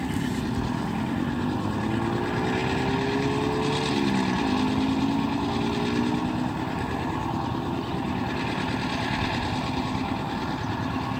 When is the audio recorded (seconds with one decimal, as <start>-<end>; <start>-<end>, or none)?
0.0-11.2